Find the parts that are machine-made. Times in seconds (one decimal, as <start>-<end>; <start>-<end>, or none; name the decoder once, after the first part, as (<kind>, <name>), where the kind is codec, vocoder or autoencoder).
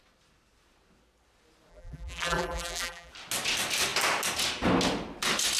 1.7-3.1 (vocoder, BigVGAN v2)